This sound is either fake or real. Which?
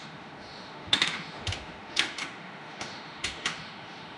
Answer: fake